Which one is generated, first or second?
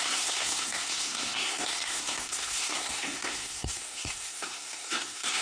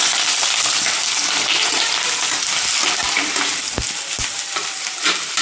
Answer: first